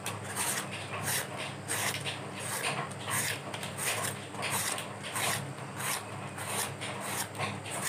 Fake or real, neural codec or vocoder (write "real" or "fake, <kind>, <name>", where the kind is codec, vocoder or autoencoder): fake, vocoder, BigVGAN v2